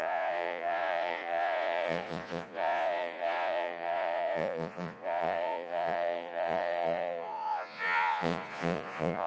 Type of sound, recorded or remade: remade